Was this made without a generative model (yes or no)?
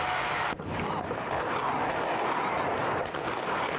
yes